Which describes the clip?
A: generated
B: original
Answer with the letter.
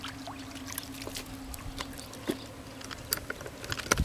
B